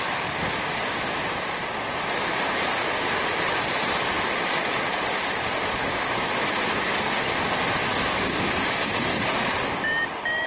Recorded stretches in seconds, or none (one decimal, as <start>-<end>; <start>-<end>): 0.0-5.8; 6.3-7.9; 9.6-10.5